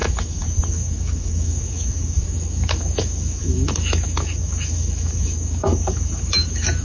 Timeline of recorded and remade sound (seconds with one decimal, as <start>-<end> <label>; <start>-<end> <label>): 0.0-6.8 remade